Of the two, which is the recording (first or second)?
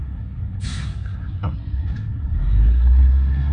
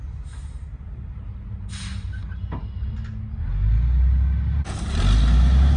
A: second